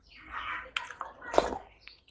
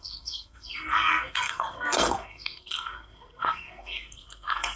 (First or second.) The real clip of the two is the first